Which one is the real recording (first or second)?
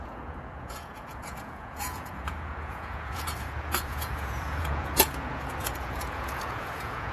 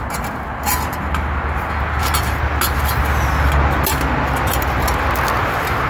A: second